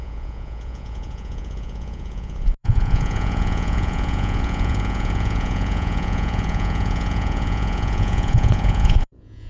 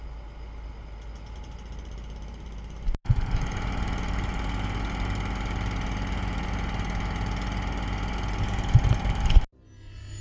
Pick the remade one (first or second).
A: first